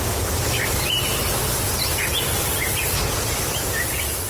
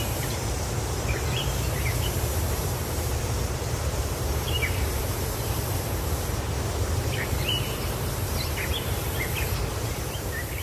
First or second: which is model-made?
second